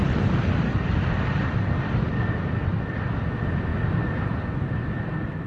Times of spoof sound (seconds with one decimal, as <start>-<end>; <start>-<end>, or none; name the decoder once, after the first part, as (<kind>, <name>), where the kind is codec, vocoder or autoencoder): none